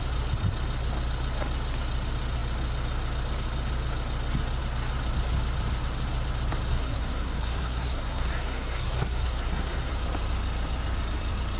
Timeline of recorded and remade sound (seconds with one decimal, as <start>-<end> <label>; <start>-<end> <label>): 0.0-6.7 recorded; 6.7-9.9 remade; 9.9-11.6 recorded